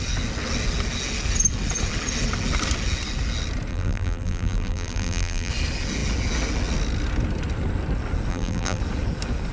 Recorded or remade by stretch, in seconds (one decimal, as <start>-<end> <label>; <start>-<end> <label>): 0.0-3.7 recorded; 3.7-5.5 remade; 5.5-8.3 recorded; 8.3-8.8 remade; 8.8-9.5 recorded